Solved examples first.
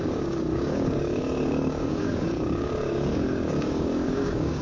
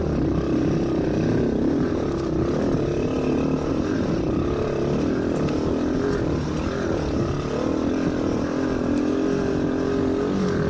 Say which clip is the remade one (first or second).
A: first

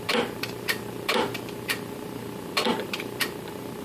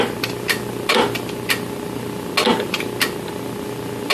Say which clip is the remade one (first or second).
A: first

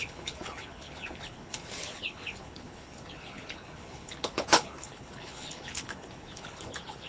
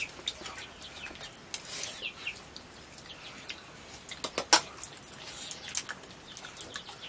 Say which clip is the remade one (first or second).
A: first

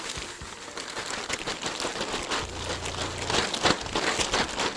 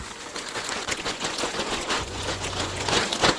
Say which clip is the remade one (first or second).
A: second